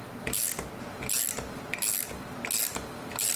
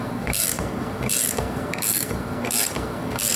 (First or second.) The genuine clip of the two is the first